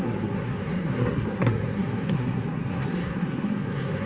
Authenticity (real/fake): fake